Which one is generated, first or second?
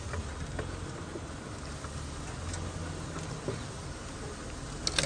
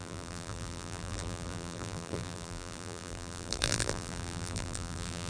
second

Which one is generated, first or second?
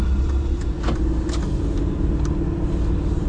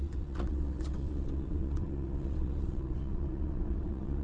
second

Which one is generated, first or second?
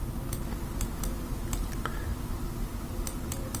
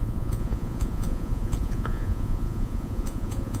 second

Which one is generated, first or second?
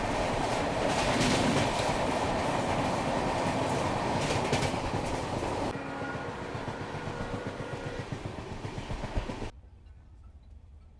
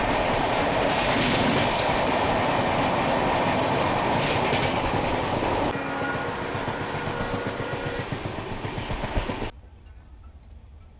first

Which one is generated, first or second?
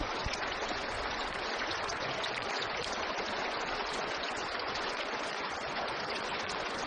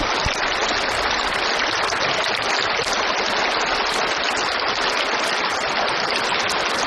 first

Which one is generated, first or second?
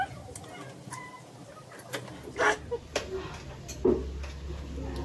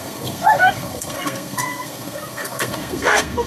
second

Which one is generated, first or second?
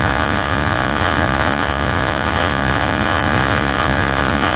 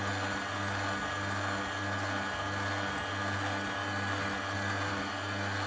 first